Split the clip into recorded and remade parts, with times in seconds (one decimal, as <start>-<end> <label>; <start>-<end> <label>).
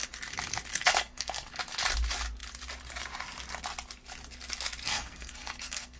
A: 0.0-0.7 recorded; 0.7-1.5 remade; 1.5-4.8 recorded; 4.8-6.0 remade